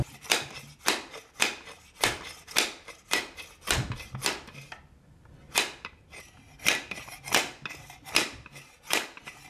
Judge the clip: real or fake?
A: real